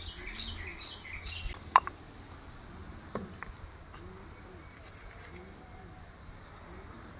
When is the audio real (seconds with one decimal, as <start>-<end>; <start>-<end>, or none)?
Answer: 0.0-7.2